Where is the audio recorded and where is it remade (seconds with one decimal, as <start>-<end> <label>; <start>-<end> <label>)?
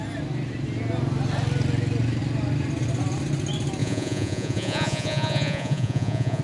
0.0-3.8 recorded; 3.8-6.4 remade